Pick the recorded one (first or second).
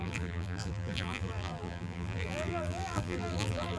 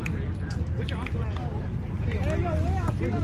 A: second